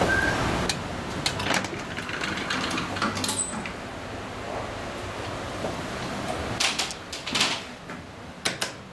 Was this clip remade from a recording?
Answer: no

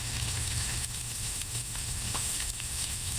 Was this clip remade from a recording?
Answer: yes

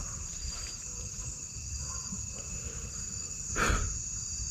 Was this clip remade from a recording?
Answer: yes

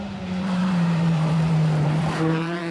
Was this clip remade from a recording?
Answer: yes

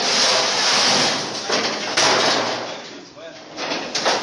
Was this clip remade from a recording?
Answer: no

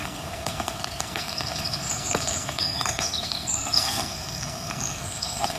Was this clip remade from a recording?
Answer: yes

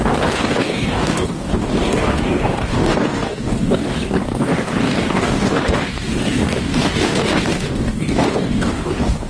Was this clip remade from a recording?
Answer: yes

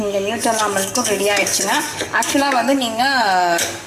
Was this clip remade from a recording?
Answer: yes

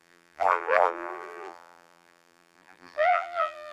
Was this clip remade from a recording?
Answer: yes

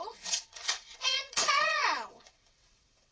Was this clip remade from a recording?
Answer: yes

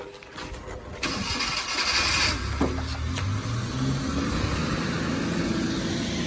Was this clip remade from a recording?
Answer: no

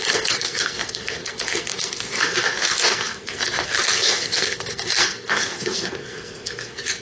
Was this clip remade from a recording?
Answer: yes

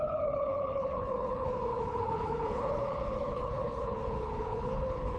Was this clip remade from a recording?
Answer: yes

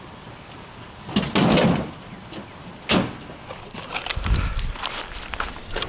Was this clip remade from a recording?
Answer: no